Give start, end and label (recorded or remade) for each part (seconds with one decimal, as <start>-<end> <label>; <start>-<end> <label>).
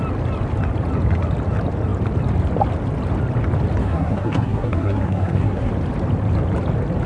0.0-3.8 recorded; 3.8-5.7 remade; 5.7-7.1 recorded